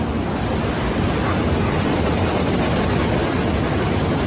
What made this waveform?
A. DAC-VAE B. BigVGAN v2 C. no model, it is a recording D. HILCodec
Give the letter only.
C